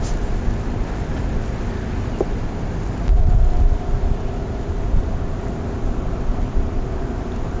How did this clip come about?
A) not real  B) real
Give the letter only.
B